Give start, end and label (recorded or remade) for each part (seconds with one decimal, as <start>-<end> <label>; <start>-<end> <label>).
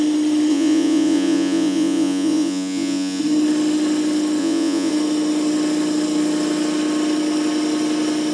0.0-0.5 recorded; 0.5-3.2 remade; 3.2-4.4 recorded; 4.4-4.9 remade; 4.9-8.3 recorded